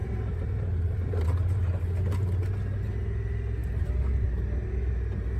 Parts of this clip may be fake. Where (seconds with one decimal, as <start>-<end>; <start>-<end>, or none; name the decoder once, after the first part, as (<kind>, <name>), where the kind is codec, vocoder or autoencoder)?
0.0-1.8 (vocoder, BigVGAN v2)